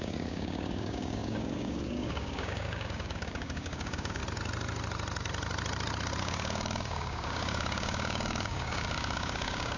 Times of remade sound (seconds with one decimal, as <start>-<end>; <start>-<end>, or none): 0.0-4.2; 6.2-9.8